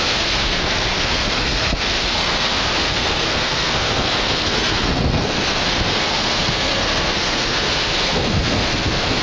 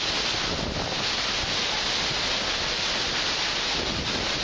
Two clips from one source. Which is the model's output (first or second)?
first